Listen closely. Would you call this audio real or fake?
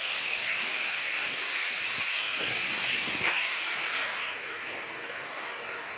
fake